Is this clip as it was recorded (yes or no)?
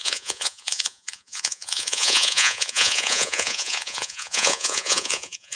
no